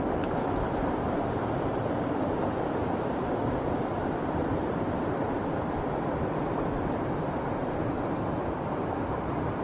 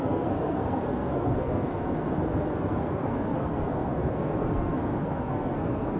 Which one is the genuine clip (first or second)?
first